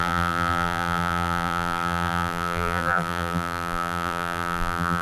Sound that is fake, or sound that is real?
fake